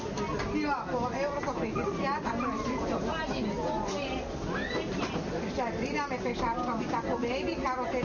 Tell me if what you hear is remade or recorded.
recorded